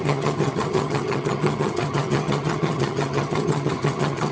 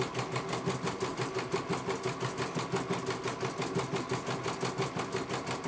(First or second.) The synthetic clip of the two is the first